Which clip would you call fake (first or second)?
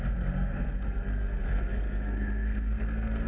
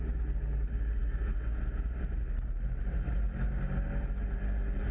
first